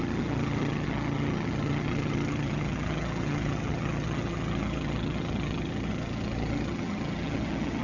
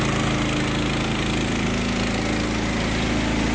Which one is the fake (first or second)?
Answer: first